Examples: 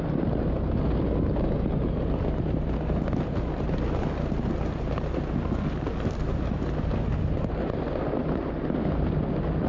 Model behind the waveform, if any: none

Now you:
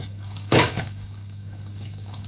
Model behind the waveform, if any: codec, DAC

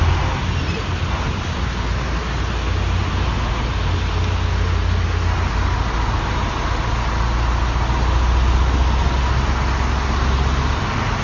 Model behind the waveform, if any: none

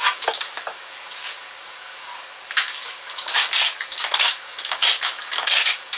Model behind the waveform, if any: codec, DAC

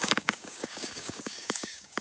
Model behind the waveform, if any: codec, DAC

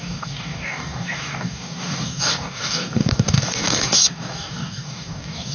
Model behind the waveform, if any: codec, DAC